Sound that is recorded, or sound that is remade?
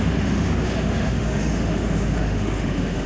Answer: remade